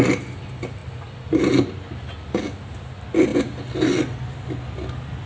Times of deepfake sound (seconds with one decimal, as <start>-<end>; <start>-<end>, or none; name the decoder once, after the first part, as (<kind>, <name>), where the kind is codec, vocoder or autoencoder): none